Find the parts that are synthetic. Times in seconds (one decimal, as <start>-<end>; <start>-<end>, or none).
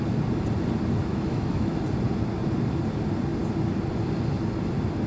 1.1-1.8